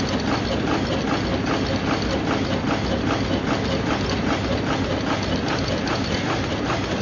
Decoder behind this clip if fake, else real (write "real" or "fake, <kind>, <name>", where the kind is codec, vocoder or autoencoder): real